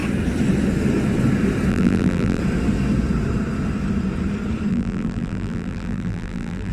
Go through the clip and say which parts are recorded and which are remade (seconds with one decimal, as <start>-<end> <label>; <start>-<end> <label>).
0.0-1.7 recorded; 1.7-2.4 remade; 2.4-4.7 recorded; 4.7-6.7 remade